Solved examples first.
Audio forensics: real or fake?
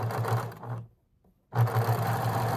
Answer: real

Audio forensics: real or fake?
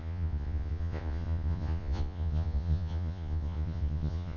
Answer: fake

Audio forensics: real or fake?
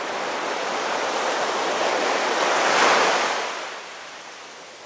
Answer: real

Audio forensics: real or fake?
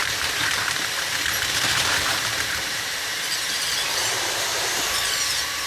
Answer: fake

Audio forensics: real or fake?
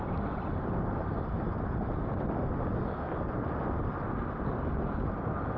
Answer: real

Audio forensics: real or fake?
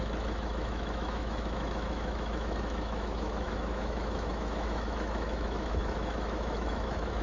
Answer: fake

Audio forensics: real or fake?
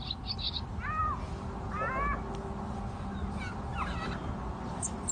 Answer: real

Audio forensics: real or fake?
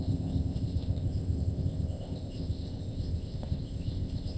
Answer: fake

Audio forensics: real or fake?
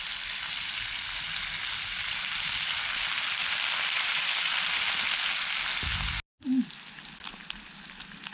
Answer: real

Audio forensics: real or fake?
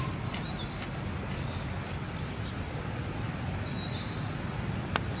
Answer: real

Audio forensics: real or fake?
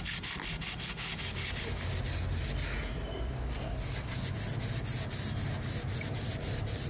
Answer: real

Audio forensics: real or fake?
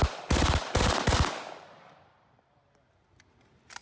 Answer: real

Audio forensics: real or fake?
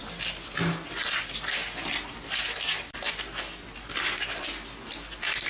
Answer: real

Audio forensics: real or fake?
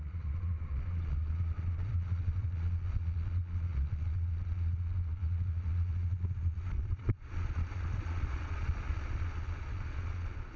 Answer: fake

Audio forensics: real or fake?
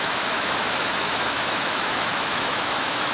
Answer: fake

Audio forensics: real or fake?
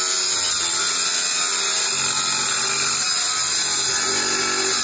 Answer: real